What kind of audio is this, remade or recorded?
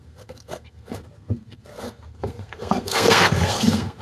remade